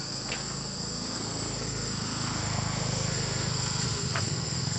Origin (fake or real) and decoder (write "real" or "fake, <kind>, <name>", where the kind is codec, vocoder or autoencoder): fake, codec, SNAC